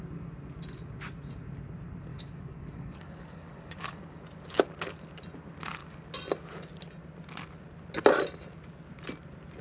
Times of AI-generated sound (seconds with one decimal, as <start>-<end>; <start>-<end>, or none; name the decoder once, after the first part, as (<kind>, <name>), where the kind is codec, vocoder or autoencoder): 2.1-4.2 (codec, DAC)